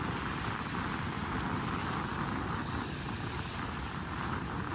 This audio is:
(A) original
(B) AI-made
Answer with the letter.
A